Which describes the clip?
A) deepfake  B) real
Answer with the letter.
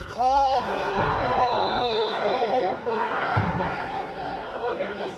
A